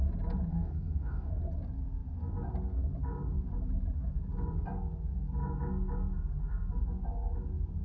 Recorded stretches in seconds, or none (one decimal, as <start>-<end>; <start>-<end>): 0.0-0.5; 1.3-7.8